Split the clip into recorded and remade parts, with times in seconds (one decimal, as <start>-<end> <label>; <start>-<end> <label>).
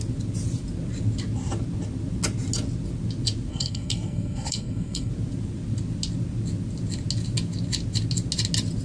0.0-3.5 recorded; 3.5-5.1 remade; 5.1-8.8 recorded